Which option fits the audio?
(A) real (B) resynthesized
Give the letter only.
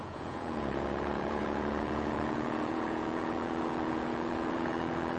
B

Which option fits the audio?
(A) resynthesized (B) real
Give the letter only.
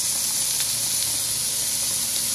B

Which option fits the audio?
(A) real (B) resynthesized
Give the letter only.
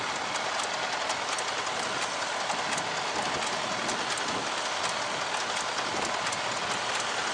A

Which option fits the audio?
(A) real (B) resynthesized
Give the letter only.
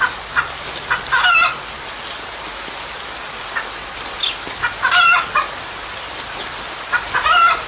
A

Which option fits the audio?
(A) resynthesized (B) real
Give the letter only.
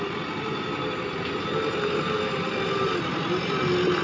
B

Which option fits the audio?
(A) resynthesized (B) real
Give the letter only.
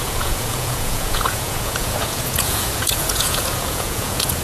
A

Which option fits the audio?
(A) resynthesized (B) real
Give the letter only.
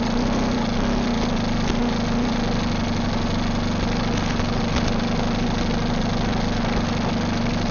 B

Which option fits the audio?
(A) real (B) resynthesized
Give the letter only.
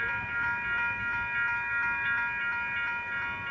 A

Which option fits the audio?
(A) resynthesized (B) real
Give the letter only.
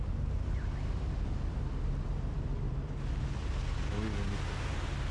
B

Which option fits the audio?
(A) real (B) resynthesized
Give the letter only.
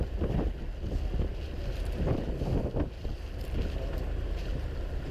A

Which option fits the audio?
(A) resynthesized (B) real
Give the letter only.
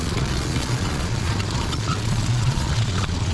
A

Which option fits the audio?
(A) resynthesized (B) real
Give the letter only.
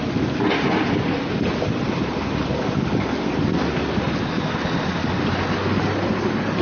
B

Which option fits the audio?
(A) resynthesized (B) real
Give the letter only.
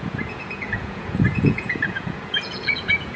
A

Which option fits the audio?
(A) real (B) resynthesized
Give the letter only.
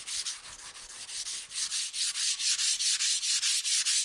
A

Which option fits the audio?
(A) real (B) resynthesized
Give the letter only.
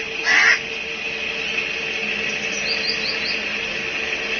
A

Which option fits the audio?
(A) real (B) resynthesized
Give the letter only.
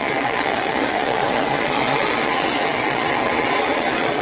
B